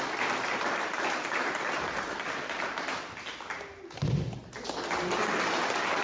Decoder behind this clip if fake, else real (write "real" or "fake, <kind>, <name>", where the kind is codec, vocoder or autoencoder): real